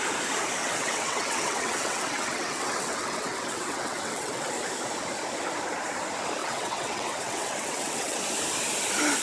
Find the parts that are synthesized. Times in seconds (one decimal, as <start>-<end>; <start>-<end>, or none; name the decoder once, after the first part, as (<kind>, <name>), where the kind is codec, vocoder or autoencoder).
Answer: 0.6-4.5 (vocoder, WaveNeXt); 6.4-8.2